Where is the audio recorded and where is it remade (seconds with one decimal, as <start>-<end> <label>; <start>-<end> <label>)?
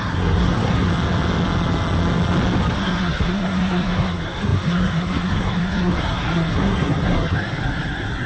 0.0-0.9 remade; 0.9-2.6 recorded; 2.6-8.3 remade